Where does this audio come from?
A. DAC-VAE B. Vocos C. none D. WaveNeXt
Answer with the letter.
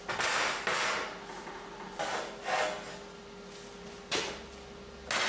C